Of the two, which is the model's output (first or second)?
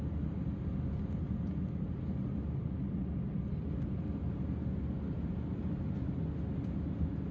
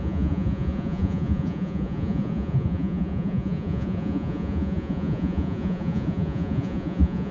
second